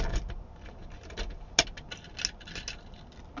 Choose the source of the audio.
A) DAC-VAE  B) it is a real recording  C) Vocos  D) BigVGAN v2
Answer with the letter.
B